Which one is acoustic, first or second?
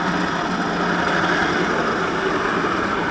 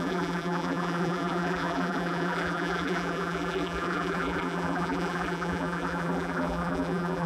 first